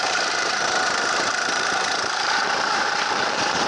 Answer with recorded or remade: remade